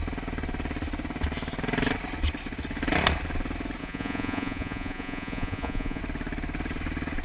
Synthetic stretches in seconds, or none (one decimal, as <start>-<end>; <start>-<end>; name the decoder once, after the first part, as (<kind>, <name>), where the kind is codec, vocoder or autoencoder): 3.8-6.0 (vocoder, Vocos)